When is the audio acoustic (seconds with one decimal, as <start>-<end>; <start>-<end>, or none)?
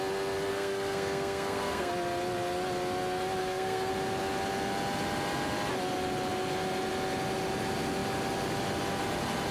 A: 0.0-0.5; 1.9-3.4; 3.9-9.5